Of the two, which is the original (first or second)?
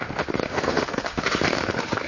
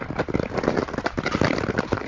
second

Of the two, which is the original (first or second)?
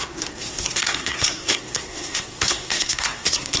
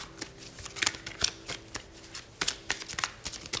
second